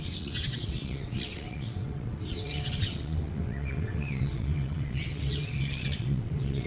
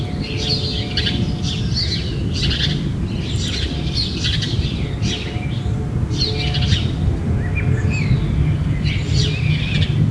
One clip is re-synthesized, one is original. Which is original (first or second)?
second